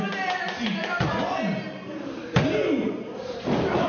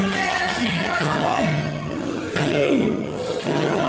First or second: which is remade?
second